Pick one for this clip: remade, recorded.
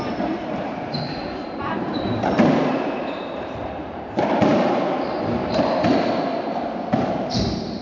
remade